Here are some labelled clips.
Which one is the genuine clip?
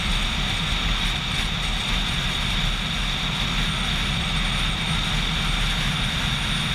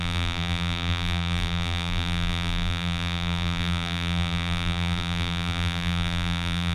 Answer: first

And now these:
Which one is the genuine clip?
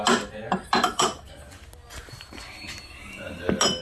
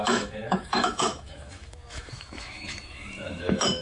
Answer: first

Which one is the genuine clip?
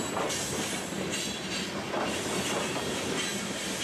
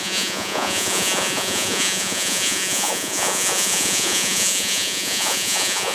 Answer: first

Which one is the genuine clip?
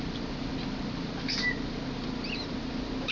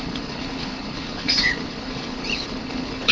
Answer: first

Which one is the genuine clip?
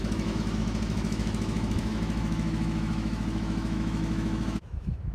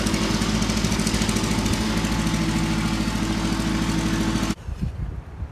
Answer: second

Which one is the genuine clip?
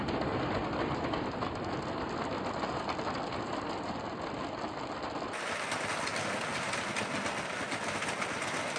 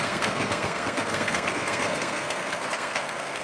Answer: first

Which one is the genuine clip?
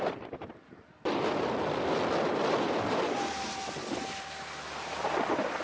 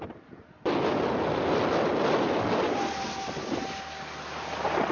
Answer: second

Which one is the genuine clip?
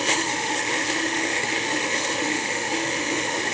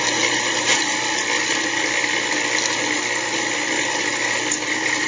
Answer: second